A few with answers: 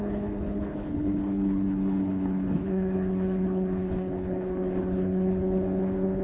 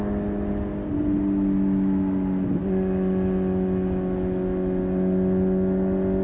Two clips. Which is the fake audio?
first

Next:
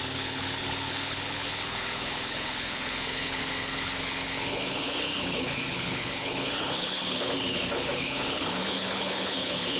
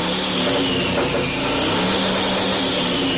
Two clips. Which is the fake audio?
first